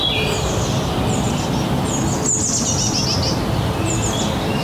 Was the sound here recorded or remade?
recorded